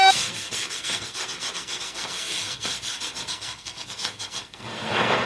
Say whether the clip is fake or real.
fake